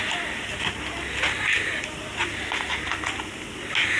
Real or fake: real